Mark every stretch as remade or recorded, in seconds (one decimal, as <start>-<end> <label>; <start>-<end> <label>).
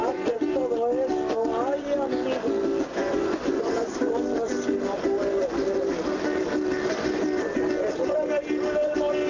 0.0-0.5 remade; 0.5-2.9 recorded; 2.9-4.1 remade; 4.1-9.3 recorded